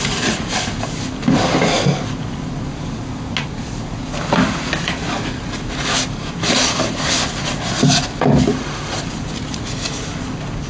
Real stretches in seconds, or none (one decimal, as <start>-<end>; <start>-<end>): 0.0-8.5; 9.0-10.7